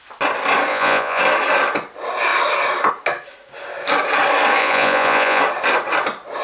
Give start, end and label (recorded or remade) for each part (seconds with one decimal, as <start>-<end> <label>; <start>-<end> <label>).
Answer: 0.0-0.7 recorded; 0.7-1.2 remade; 1.2-4.6 recorded; 4.6-5.4 remade; 5.4-6.4 recorded